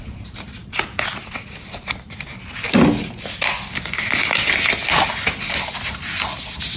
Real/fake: real